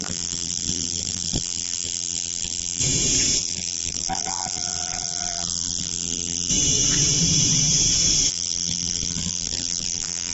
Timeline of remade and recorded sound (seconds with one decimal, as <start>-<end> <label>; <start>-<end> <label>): 0.0-2.8 remade; 2.8-3.4 recorded; 3.4-6.5 remade; 6.5-8.3 recorded; 8.3-10.3 remade